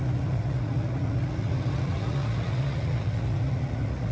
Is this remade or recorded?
remade